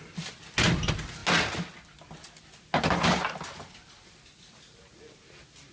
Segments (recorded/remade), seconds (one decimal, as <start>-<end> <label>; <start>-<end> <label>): 0.0-5.7 recorded